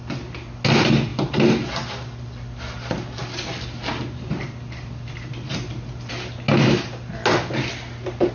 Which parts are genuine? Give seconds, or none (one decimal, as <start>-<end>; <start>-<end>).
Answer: 0.0-1.1; 6.1-8.3